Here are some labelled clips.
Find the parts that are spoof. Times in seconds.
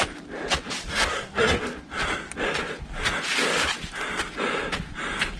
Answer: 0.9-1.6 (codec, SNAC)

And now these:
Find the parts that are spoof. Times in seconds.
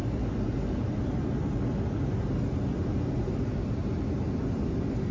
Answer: none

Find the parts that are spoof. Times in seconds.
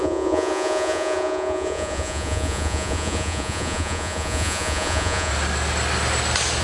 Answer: 0.0-5.3 (vocoder, Vocos)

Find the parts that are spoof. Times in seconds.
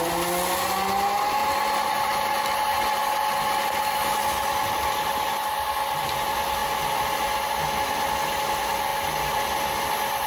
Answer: none